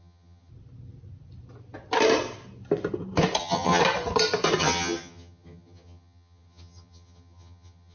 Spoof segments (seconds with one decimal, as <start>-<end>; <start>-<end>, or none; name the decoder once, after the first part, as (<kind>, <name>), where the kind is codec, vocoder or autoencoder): 0.0-0.5 (vocoder, HiFi-GAN); 3.4-3.8; 4.6-7.9